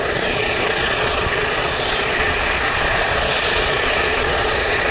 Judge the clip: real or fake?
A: fake